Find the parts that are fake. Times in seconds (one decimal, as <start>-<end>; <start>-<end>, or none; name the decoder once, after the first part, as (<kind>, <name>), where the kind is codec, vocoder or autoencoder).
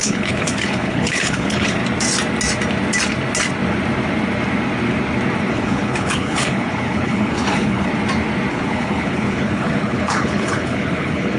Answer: 0.0-1.8 (codec, HILCodec); 5.5-7.9; 8.5-11.4